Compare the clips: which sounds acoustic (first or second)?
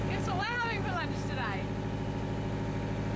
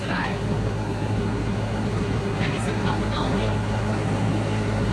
first